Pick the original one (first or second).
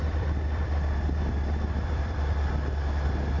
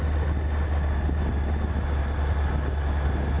second